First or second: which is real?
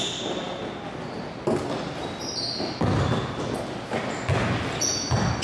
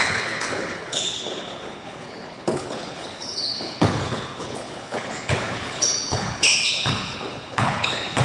first